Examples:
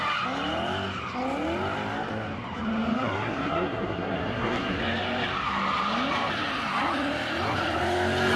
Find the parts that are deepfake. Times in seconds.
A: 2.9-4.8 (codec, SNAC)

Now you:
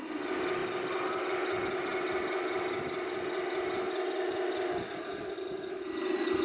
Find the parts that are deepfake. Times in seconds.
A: none

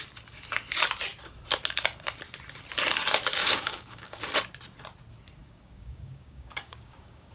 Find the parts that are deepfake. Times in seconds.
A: 3.4-4.2 (codec, DAC); 5.4-7.3

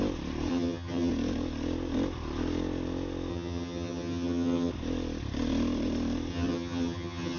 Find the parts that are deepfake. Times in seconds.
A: 0.5-1.1 (vocoder, HiFi-GAN); 3.3-4.7; 6.3-7.4

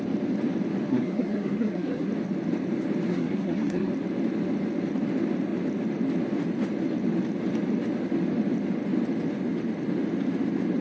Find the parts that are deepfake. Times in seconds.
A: 0.9-2.1 (codec, SNAC); 3.1-3.9

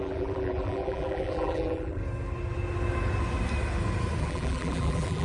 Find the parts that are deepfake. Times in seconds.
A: 0.0-2.0 (vocoder, BigVGAN v2); 4.2-5.2